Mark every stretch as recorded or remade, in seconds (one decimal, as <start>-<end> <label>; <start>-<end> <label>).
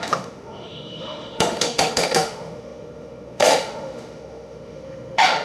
0.0-5.4 remade